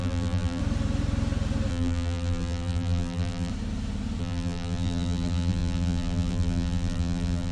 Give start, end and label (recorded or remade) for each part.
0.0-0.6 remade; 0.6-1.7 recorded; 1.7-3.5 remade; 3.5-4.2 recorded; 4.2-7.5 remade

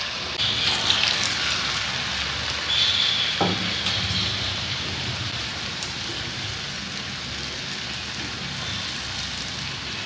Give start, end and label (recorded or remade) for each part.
0.0-4.3 recorded; 4.3-6.5 remade; 6.5-10.1 recorded

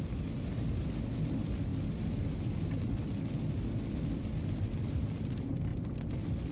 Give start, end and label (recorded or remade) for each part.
0.0-5.7 recorded; 5.7-6.5 remade

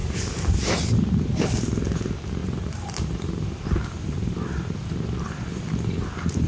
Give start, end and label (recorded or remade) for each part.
0.0-0.7 remade; 0.7-2.4 recorded; 2.4-5.6 remade; 5.6-6.5 recorded

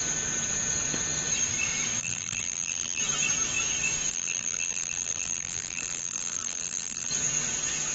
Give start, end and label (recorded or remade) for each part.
0.0-2.0 recorded; 2.0-3.0 remade; 3.0-4.1 recorded; 4.1-7.1 remade; 7.1-7.9 recorded

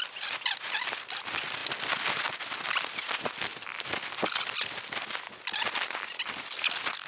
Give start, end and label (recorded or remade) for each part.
0.0-1.6 remade; 1.6-2.3 recorded; 2.3-3.5 remade; 3.5-7.1 recorded

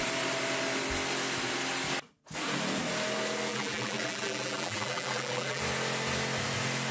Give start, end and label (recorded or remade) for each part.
0.0-3.5 recorded; 3.5-5.6 remade; 5.6-6.9 recorded